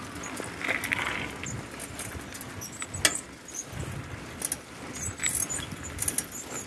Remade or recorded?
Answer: recorded